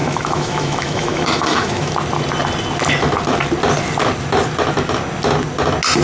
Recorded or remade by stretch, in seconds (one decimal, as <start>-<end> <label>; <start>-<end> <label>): 0.0-1.9 remade; 1.9-6.0 recorded